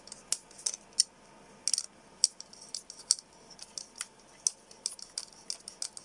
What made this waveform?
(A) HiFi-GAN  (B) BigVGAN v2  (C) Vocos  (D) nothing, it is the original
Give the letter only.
D